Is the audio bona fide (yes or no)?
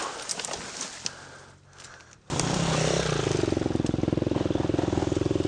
yes